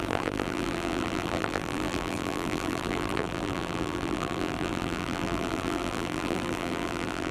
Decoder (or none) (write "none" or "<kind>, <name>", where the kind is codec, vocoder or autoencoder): vocoder, BigVGAN v2